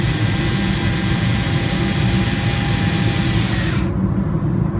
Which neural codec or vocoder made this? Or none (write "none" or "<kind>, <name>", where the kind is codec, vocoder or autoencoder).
none